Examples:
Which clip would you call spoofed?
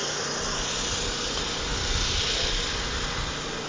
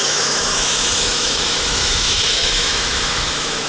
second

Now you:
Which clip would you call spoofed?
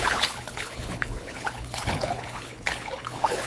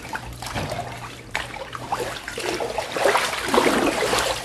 first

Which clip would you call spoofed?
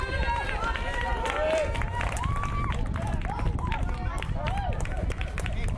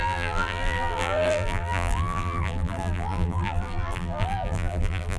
second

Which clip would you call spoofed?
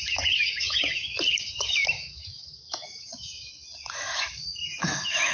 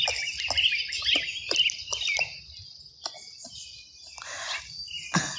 first